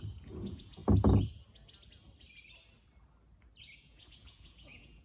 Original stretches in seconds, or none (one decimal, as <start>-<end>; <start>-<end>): 0.8-3.6